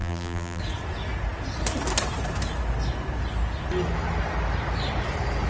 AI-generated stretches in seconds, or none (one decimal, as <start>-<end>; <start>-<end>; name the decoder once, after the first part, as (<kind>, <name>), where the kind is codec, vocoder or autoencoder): 0.0-0.6 (vocoder, BigVGAN v2)